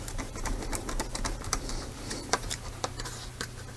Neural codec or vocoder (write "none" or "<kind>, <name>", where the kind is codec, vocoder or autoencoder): vocoder, BigVGAN v2